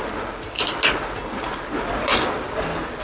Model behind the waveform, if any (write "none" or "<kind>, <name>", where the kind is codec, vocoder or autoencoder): none